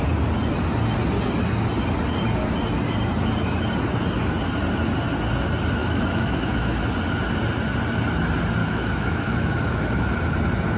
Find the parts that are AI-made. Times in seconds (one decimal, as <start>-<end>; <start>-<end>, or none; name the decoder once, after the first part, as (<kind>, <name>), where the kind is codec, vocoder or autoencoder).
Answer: 5.8-6.8 (autoencoder, DAC-VAE); 8.6-10.2